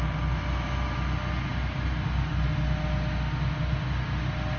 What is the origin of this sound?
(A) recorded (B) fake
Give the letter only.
A